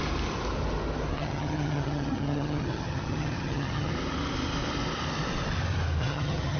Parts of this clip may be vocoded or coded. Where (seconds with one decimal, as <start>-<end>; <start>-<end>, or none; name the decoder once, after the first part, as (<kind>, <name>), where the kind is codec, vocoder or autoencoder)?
1.2-3.9 (vocoder, HiFi-GAN); 6.0-6.6